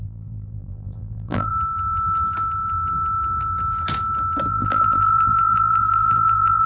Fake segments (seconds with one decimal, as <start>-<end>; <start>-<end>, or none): 0.0-1.5; 4.5-6.7